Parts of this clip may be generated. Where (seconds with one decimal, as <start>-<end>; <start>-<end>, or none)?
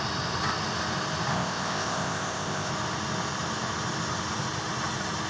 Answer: 1.3-2.7